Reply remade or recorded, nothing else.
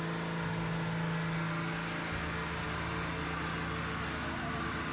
recorded